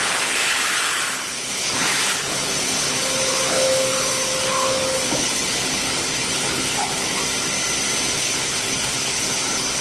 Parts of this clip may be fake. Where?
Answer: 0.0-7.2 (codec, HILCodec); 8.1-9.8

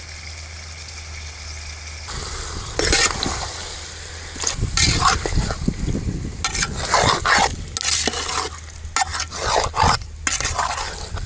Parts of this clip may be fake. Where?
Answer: none

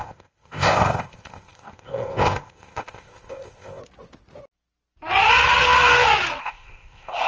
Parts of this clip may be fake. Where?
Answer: 0.0-3.8 (codec, ZipCodec); 6.4-7.3

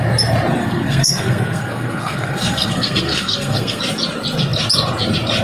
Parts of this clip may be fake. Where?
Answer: 0.6-3.8 (codec, SNAC)